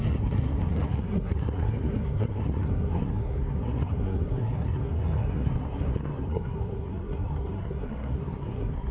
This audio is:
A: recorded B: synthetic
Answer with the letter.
B